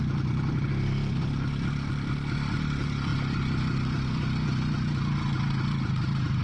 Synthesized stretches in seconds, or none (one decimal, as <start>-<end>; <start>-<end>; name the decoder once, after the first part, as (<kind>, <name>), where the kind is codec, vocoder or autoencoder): none